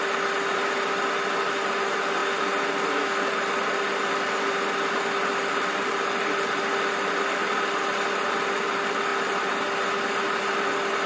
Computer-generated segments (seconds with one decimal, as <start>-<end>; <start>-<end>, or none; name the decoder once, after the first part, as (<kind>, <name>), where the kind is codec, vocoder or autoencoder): none